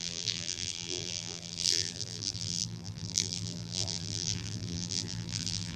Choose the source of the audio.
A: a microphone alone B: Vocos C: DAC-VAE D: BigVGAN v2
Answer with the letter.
D